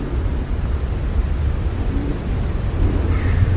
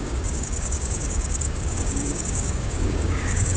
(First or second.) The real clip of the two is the first